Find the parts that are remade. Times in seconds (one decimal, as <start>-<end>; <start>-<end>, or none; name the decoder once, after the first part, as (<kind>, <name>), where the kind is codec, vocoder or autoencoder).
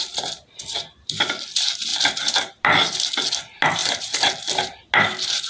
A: none